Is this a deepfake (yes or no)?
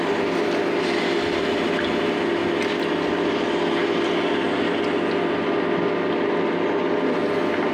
no